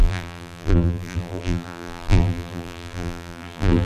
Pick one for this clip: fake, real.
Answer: fake